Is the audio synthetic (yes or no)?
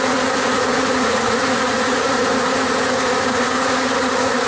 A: yes